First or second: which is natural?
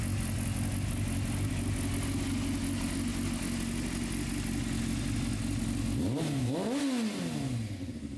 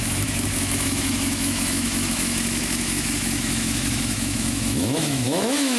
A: first